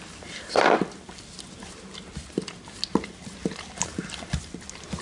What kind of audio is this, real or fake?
real